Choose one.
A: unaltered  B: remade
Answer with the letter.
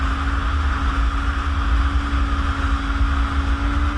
A